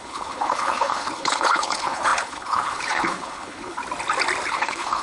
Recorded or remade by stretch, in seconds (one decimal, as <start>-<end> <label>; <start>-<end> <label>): 0.0-3.8 remade; 3.8-4.5 recorded; 4.5-5.0 remade